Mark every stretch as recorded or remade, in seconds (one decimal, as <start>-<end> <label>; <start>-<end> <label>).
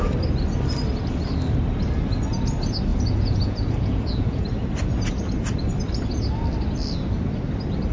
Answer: 0.0-2.9 recorded; 2.9-4.4 remade; 4.4-7.9 recorded